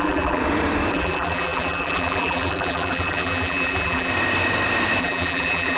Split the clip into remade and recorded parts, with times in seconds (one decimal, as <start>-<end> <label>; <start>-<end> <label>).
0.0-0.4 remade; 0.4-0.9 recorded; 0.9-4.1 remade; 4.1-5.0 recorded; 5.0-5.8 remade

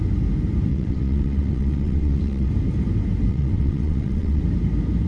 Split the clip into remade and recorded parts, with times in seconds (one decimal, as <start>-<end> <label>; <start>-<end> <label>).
0.0-0.7 recorded; 0.7-2.5 remade; 2.5-3.3 recorded; 3.3-4.4 remade; 4.4-5.1 recorded

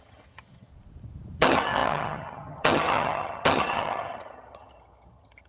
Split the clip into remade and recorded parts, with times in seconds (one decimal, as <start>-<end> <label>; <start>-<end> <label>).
0.0-0.7 remade; 0.7-1.4 recorded; 1.4-5.5 remade

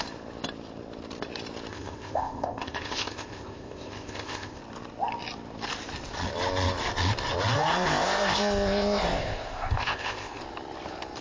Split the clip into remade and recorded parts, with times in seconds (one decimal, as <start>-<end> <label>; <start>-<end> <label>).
0.0-1.7 recorded; 1.7-4.6 remade; 4.6-7.7 recorded; 7.7-10.4 remade; 10.4-11.2 recorded

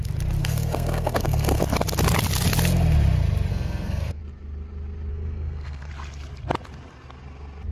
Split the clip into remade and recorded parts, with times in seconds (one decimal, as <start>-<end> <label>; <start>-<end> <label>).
0.0-0.4 recorded; 0.4-1.6 remade; 1.6-3.5 recorded; 3.5-4.2 remade; 4.2-5.1 recorded; 5.1-5.9 remade; 5.9-7.7 recorded

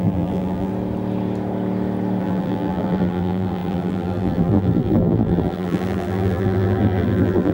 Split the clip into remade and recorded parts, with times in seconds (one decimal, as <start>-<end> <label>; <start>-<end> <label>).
0.0-0.7 remade; 0.7-2.2 recorded; 2.2-7.5 remade

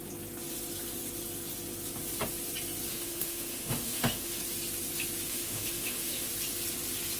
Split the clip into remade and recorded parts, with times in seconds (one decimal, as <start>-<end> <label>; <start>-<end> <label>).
0.0-2.9 recorded; 2.9-4.4 remade; 4.4-5.3 recorded; 5.3-6.3 remade; 6.3-7.2 recorded